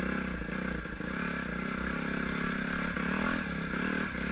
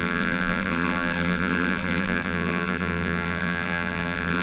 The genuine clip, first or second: first